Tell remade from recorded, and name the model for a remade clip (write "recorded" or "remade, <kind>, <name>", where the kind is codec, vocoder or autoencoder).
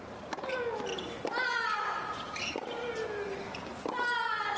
recorded